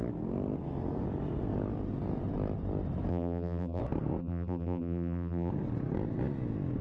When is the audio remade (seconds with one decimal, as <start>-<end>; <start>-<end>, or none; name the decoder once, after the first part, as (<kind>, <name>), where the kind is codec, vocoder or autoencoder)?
3.1-3.8 (vocoder, BigVGAN v2); 4.2-5.5